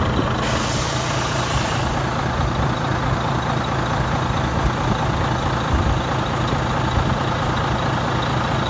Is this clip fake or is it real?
real